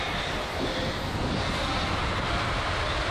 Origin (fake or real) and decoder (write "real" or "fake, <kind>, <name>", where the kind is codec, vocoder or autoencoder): real